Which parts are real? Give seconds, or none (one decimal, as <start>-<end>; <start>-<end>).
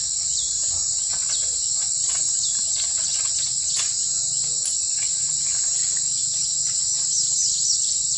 0.0-0.8; 2.4-3.1; 5.3-8.2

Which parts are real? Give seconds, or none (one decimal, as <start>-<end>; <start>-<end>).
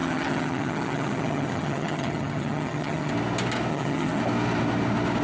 3.1-3.7; 4.2-5.2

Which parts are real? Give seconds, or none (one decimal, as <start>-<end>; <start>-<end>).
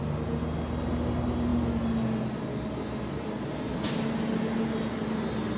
0.0-5.6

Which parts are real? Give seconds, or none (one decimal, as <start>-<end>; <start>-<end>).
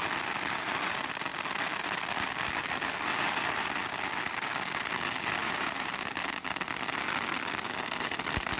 0.0-5.4; 5.9-8.6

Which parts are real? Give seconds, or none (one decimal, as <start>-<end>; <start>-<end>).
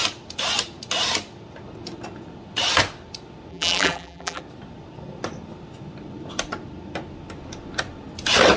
0.0-3.5; 4.4-8.6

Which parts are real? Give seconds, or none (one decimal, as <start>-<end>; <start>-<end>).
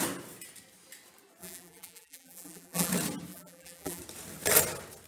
0.0-1.4; 2.9-3.3; 4.0-5.1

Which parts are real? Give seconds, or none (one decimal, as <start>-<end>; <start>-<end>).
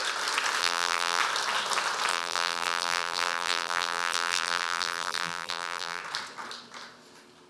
0.0-0.6; 1.2-2.1; 6.0-7.5